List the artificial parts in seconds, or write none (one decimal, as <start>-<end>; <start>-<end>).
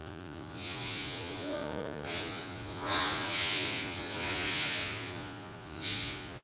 0.0-6.4